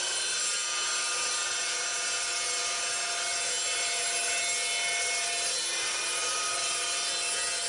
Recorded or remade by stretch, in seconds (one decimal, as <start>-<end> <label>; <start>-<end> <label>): 0.0-7.7 recorded